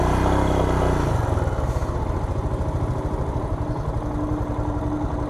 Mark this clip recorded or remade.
recorded